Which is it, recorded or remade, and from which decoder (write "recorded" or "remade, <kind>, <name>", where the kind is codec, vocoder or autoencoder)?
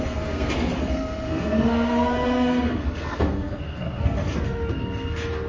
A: remade, codec, SNAC